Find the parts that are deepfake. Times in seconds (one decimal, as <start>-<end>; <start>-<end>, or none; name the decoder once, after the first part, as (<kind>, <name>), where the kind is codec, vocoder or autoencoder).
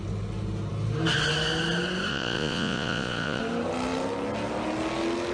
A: 2.1-3.4 (vocoder, Vocos)